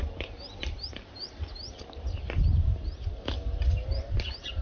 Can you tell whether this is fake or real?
fake